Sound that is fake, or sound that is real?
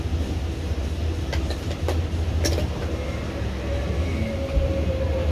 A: real